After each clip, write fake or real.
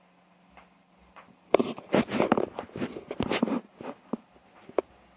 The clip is real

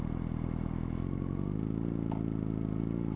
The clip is real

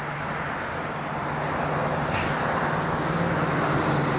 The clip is real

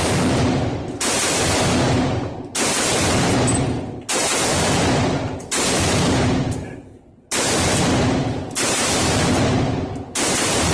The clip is real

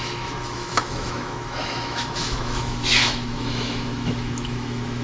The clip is fake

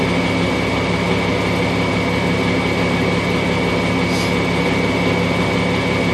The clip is real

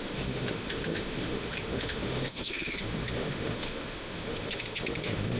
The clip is fake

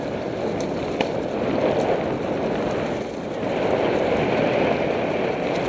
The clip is real